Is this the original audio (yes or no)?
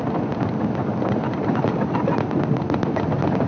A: yes